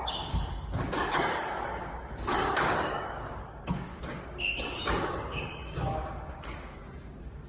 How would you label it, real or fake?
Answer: fake